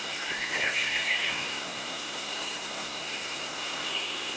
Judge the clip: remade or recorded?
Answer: remade